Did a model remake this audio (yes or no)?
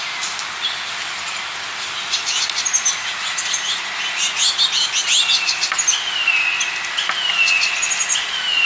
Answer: no